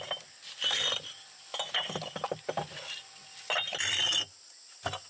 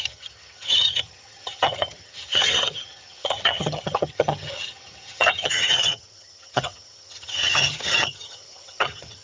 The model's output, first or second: second